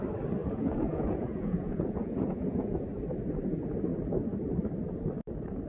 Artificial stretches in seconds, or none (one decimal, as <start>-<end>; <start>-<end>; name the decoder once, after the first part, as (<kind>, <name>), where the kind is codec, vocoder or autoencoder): 0.4-2.8 (vocoder, Vocos)